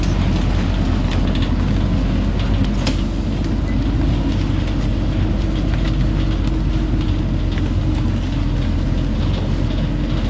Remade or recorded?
recorded